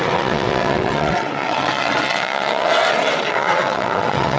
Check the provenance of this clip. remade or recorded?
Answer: remade